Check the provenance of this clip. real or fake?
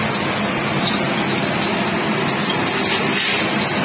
real